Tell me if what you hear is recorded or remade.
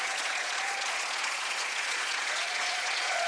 remade